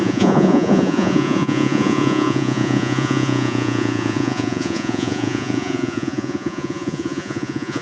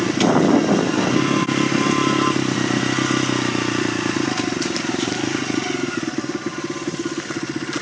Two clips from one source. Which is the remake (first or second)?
first